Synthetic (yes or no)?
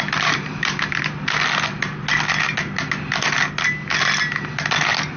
no